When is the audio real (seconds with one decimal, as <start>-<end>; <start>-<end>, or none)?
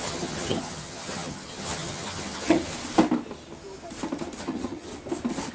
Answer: 2.7-4.4; 4.9-5.5